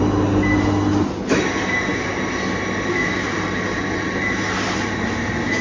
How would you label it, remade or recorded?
recorded